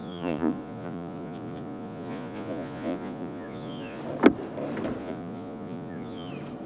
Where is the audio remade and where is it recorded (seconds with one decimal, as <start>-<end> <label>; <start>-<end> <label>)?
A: 0.0-4.0 remade; 4.0-5.0 recorded; 5.0-6.3 remade; 6.3-6.7 recorded